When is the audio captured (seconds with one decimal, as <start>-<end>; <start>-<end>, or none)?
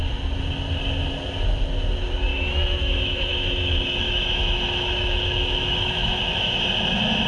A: 0.0-2.3; 6.6-7.3